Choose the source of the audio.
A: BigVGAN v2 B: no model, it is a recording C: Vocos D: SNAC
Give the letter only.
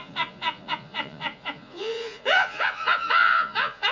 C